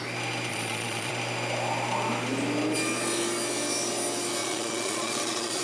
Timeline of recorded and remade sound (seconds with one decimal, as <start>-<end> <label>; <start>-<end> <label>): 0.0-0.5 recorded; 0.5-1.1 remade; 1.1-4.4 recorded; 4.4-5.6 remade